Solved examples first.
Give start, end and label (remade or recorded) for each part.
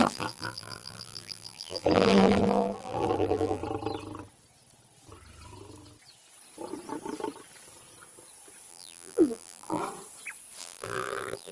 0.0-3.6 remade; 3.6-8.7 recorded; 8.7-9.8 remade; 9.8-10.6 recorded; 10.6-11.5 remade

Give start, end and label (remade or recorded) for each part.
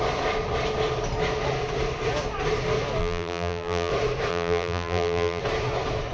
0.0-3.0 recorded; 3.0-3.9 remade; 3.9-4.3 recorded; 4.3-5.4 remade; 5.4-6.1 recorded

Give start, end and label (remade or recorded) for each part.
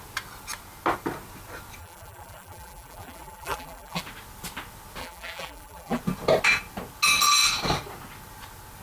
0.0-1.8 recorded; 1.8-4.0 remade; 4.0-5.0 recorded; 5.0-6.0 remade; 6.0-8.8 recorded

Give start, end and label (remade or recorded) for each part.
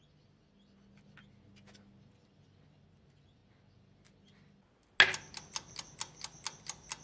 0.0-7.0 recorded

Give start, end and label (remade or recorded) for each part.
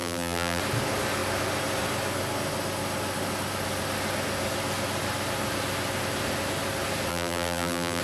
0.0-0.6 remade; 0.6-7.1 recorded; 7.1-8.0 remade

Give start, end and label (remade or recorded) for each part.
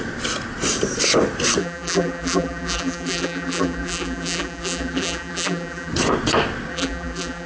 0.0-1.6 recorded; 1.6-5.9 remade; 5.9-6.7 recorded; 6.7-7.5 remade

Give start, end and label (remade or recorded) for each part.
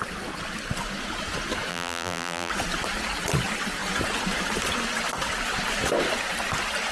0.0-1.7 recorded; 1.7-2.5 remade; 2.5-6.9 recorded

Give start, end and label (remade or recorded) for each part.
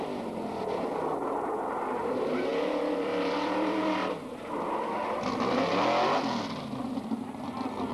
0.0-2.5 recorded; 2.5-4.1 remade; 4.1-7.9 recorded